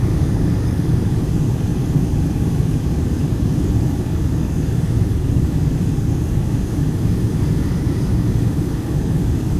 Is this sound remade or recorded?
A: remade